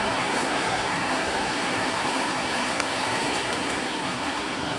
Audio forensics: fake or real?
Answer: fake